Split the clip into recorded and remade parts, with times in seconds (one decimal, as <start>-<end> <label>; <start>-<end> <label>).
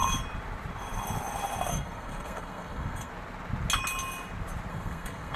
0.0-1.7 recorded; 1.7-3.1 remade; 3.1-4.7 recorded; 4.7-5.4 remade